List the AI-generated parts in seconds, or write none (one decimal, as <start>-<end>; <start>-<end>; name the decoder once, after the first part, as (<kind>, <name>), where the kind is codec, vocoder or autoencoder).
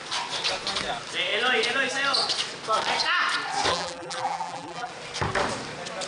3.7-4.9 (vocoder, BigVGAN v2)